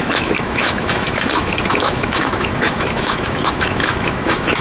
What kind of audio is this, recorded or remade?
remade